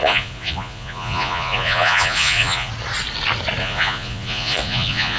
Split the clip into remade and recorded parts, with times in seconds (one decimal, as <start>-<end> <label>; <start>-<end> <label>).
0.0-2.7 remade; 2.7-3.6 recorded; 3.6-5.2 remade